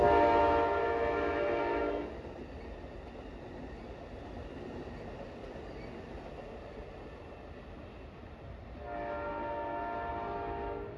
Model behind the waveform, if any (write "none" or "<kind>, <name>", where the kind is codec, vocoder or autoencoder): none